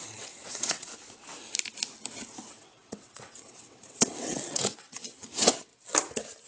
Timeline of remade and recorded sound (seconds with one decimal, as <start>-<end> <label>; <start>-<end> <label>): 0.0-0.9 remade; 0.9-2.5 recorded; 2.5-5.7 remade; 5.7-6.5 recorded